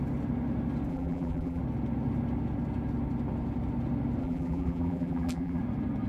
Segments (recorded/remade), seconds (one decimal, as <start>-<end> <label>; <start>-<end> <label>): 0.0-0.9 recorded; 0.9-1.6 remade; 1.6-4.2 recorded; 4.2-5.6 remade; 5.6-6.1 recorded